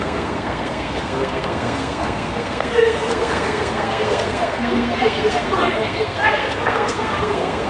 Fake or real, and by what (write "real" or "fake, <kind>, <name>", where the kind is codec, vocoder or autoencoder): fake, codec, SNAC